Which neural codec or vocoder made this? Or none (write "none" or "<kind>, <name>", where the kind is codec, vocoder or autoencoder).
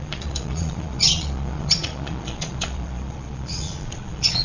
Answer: vocoder, Vocos